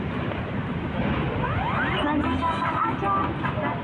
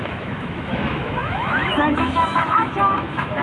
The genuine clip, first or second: first